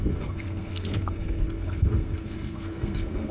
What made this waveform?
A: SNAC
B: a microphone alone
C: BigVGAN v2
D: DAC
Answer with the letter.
A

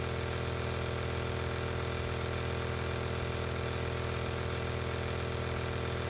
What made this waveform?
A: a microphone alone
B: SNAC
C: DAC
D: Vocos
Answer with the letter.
A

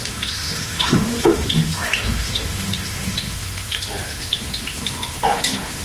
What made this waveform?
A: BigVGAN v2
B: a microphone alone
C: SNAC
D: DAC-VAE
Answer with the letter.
D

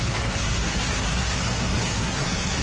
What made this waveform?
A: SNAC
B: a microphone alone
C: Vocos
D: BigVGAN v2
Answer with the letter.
A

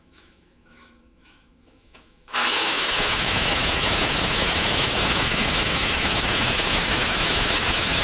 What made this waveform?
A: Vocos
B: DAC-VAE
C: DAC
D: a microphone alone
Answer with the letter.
B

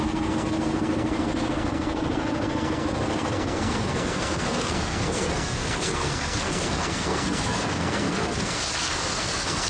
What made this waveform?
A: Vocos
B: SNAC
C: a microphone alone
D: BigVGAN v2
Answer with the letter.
B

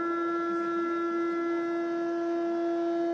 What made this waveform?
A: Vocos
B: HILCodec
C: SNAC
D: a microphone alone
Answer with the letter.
D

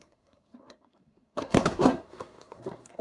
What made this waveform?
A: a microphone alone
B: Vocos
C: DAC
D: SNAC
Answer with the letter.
D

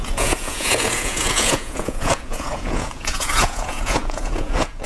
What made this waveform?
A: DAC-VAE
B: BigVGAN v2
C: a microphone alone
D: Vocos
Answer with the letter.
D